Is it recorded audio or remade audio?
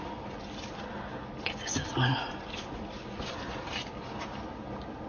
recorded